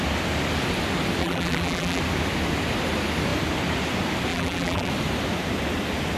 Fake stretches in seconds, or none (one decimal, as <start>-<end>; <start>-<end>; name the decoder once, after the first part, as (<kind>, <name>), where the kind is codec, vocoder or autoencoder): 1.2-2.0 (vocoder, BigVGAN v2); 4.3-4.9

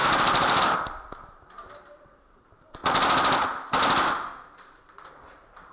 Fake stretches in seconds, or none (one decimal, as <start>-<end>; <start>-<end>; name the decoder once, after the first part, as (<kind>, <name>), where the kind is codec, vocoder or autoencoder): 0.0-2.8 (vocoder, BigVGAN v2); 5.1-5.7